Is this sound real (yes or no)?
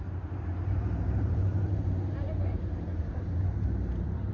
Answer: no